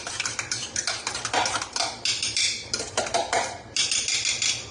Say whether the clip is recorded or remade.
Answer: recorded